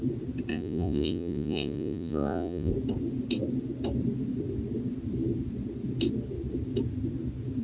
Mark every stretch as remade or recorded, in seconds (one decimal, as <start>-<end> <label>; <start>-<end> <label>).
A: 0.0-0.5 recorded; 0.5-2.7 remade; 2.7-7.6 recorded